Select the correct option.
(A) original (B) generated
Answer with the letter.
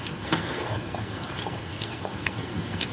B